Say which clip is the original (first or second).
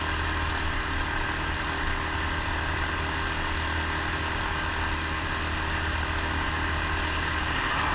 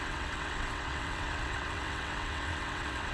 first